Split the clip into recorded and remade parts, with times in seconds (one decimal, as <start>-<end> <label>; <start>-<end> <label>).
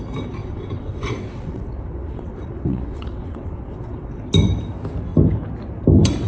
0.0-0.4 recorded; 0.4-4.2 remade; 4.2-6.3 recorded